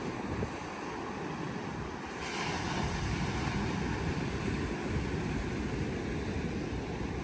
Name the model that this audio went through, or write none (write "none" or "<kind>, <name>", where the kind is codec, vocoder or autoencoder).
none